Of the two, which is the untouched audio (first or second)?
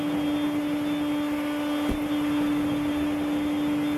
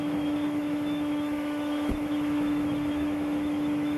first